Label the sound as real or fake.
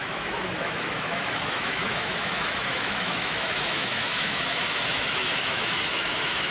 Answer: fake